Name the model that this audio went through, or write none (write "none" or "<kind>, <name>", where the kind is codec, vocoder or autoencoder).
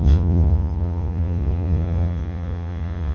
vocoder, Vocos